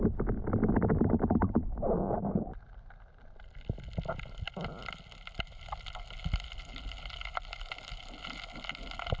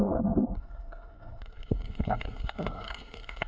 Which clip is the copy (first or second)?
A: second